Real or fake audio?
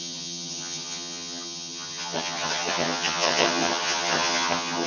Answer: fake